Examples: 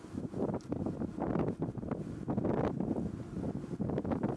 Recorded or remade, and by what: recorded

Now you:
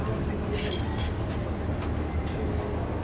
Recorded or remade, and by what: recorded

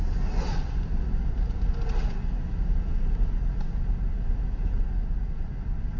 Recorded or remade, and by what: recorded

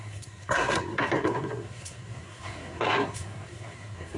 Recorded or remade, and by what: remade, codec, SNAC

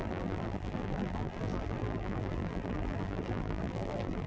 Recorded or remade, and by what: remade, vocoder, BigVGAN v2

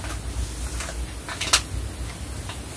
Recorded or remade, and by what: recorded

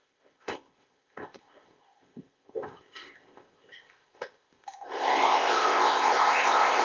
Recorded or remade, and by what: remade, codec, ZipCodec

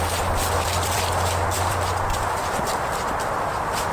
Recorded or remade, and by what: remade, vocoder, BigVGAN v2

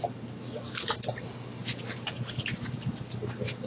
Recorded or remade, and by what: recorded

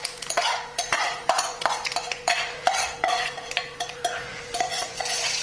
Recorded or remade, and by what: remade, vocoder, Vocos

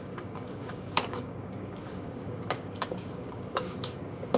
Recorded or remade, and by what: remade, codec, DAC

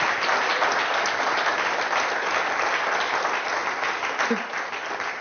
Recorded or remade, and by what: recorded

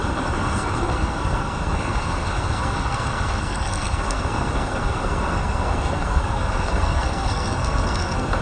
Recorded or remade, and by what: remade, codec, SNAC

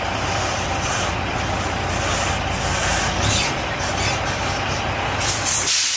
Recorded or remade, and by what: recorded